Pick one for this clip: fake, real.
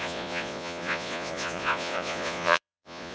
fake